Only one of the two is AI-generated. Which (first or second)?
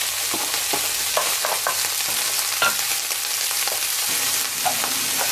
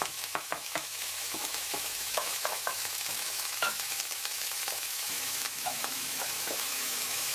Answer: second